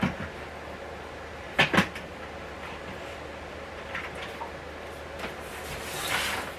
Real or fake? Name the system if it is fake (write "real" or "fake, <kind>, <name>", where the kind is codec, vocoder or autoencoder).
real